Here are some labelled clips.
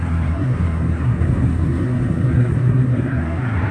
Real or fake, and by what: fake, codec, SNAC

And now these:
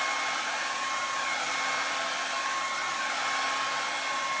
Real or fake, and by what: real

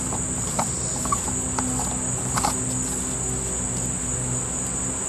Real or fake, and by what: real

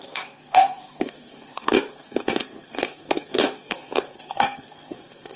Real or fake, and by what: fake, codec, SNAC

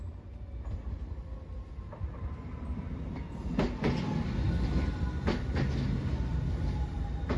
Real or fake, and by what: real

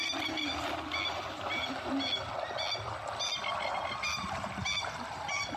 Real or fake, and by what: real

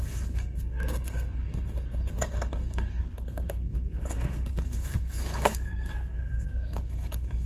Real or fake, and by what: fake, codec, SNAC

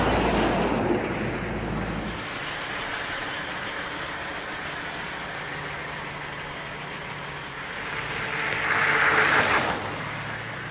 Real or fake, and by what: real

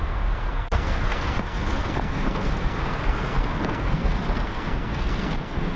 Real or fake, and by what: fake, codec, SNAC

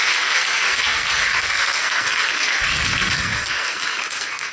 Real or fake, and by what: fake, codec, SNAC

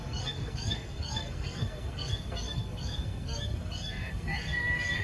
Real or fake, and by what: fake, codec, SNAC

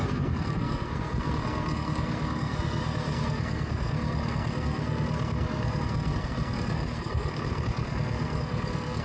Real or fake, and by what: fake, codec, SNAC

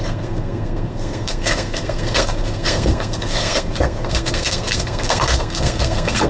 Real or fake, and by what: fake, codec, SNAC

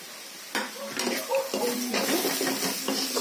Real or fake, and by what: real